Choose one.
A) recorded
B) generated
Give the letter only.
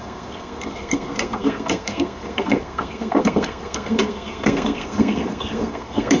B